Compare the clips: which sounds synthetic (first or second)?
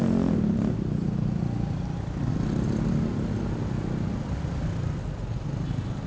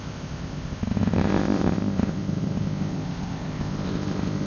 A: second